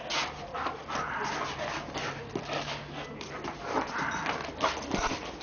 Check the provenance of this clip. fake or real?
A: real